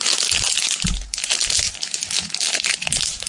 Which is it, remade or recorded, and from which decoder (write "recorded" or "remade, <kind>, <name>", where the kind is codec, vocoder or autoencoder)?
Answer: recorded